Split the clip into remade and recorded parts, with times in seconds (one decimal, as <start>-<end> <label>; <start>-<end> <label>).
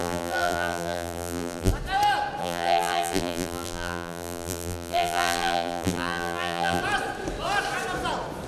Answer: 0.0-1.7 remade; 1.7-2.4 recorded; 2.4-6.8 remade; 6.8-8.5 recorded